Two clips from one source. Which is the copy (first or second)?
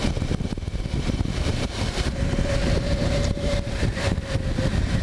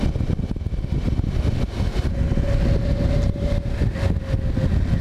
first